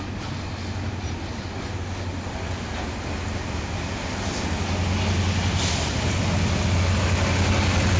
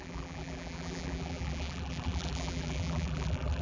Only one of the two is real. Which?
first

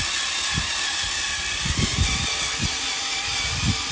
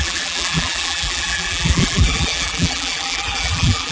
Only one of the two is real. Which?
first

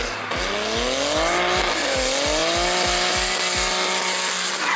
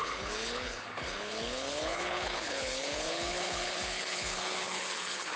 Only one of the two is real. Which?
first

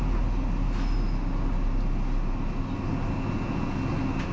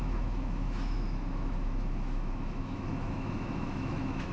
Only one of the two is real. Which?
first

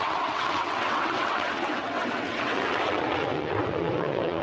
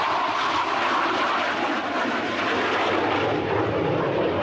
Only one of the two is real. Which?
second